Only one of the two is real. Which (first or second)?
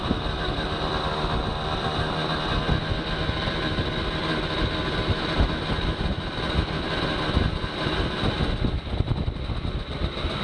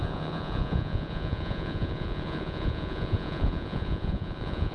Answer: first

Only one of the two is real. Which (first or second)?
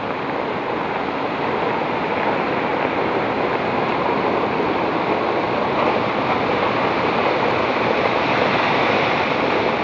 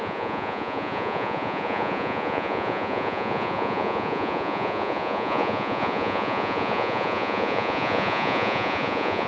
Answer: first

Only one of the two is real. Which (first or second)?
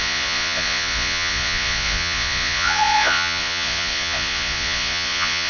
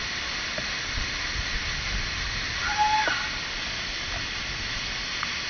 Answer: second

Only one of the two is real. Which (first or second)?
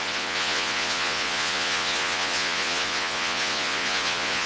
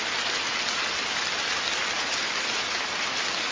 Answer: second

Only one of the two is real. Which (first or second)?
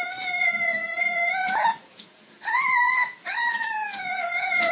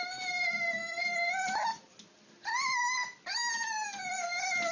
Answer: second